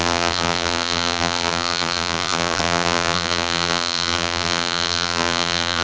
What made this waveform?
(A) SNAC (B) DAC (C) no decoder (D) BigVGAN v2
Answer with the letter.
D